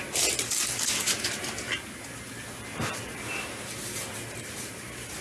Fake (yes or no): no